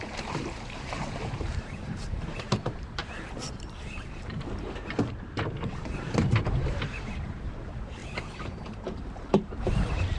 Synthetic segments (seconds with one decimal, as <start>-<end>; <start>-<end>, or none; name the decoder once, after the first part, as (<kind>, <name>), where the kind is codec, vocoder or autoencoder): 0.0-10.2 (vocoder, BigVGAN v2)